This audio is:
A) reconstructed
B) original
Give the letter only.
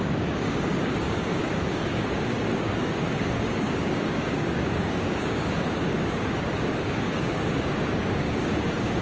A